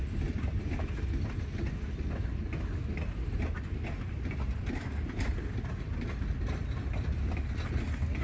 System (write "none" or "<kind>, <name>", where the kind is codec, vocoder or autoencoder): none